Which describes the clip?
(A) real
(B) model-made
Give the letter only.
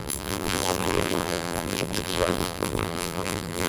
B